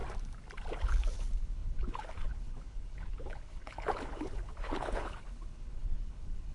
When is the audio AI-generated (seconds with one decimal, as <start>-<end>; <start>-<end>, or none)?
0.7-6.5